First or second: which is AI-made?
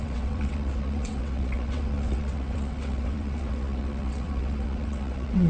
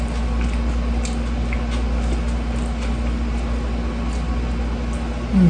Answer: first